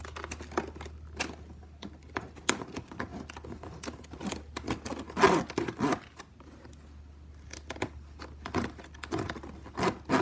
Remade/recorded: recorded